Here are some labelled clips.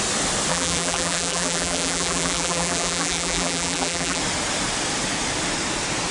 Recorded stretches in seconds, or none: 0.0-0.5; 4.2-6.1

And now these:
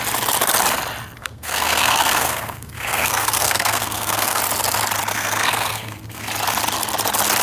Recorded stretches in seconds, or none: 0.0-1.2; 4.4-5.1; 6.3-7.4

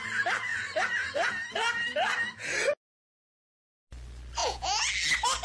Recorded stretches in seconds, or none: 0.0-4.4; 4.9-5.4

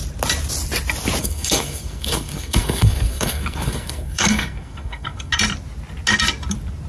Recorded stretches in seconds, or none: 0.0-1.2; 5.3-6.9

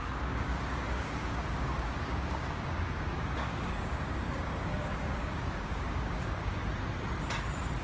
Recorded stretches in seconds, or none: 6.6-7.8